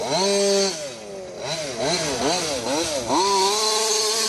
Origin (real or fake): real